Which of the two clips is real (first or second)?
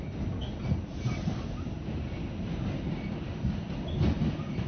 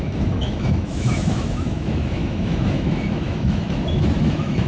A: first